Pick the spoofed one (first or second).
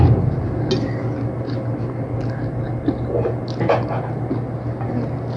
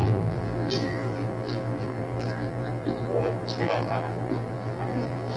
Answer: second